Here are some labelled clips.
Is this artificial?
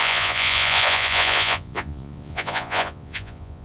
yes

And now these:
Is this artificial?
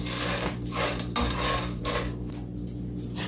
no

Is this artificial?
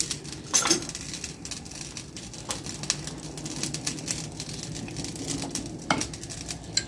no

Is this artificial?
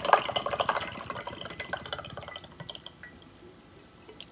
no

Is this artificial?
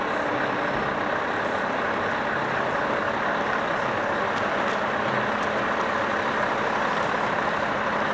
no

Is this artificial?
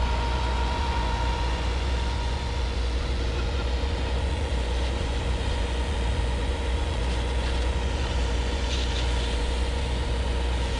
yes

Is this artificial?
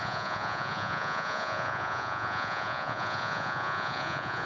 yes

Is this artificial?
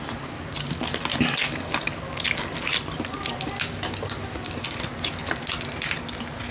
no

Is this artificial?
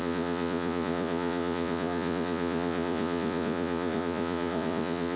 yes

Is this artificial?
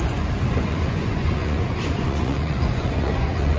yes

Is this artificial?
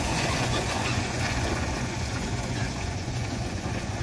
yes